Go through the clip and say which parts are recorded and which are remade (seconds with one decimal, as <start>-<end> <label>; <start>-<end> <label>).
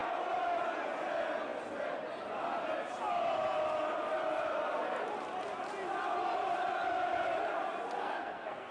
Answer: 0.0-8.0 recorded; 8.0-8.7 remade